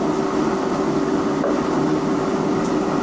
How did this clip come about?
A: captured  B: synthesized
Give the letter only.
A